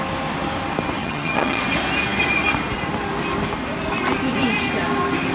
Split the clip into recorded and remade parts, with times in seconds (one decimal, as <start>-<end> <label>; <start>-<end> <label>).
0.0-1.0 recorded; 1.0-1.6 remade; 1.6-5.3 recorded